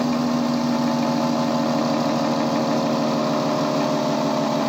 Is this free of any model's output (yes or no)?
yes